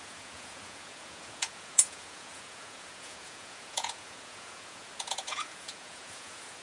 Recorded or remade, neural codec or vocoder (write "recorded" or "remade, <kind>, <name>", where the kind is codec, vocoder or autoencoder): remade, vocoder, Vocos